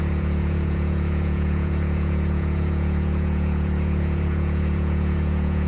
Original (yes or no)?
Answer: no